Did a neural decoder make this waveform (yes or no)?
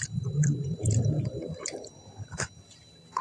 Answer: yes